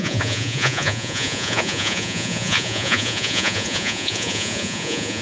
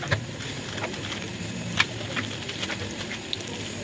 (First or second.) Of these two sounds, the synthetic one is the first